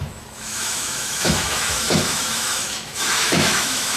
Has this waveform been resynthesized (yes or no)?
yes